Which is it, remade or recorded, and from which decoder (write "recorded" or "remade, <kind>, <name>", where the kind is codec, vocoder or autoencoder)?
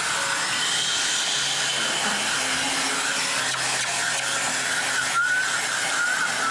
recorded